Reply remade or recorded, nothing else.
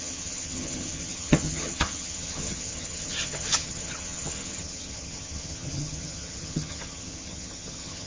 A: remade